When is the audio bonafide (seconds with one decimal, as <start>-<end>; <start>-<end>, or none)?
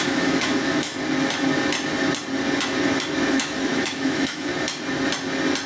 0.9-3.3; 4.5-5.7